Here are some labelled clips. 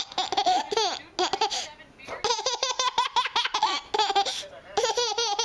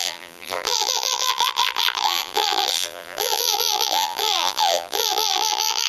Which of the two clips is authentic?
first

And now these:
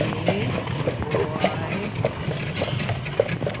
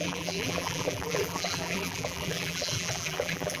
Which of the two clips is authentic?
first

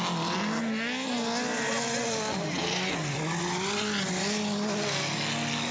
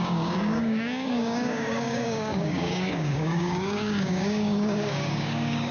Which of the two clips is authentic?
first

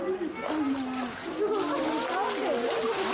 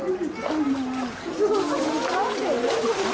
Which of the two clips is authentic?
first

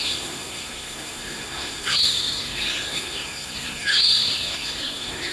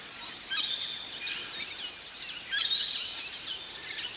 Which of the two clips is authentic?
second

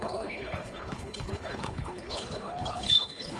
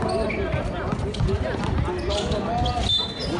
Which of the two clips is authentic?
second